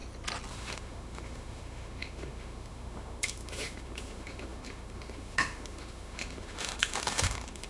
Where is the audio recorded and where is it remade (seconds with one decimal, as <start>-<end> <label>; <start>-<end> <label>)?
0.0-0.5 recorded; 0.5-7.7 remade